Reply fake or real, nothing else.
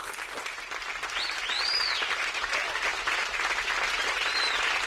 real